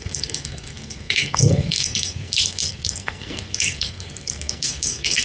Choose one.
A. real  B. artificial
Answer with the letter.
B